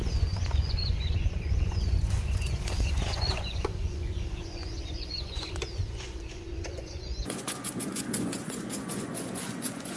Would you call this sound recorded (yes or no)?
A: no